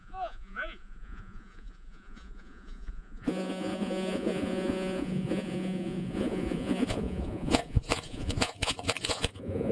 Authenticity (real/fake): fake